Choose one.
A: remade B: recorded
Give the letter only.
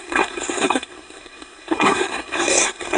A